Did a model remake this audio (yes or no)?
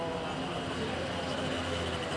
no